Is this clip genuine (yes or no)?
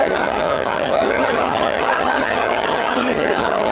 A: no